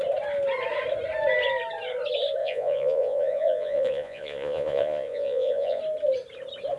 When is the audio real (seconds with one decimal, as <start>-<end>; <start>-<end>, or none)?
0.0-2.4; 5.8-6.8